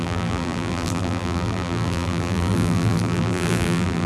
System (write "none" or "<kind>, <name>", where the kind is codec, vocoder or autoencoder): vocoder, BigVGAN v2